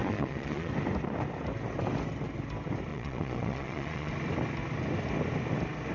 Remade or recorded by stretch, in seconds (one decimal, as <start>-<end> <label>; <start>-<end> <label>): 0.0-0.7 remade; 0.7-2.9 recorded; 2.9-4.1 remade; 4.1-5.9 recorded